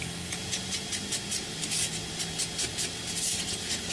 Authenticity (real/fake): real